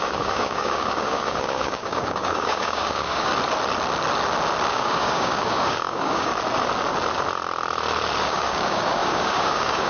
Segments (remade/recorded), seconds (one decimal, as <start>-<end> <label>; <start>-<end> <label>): 0.0-3.3 remade; 3.3-4.7 recorded; 4.7-6.3 remade; 6.3-8.2 recorded; 8.2-9.9 remade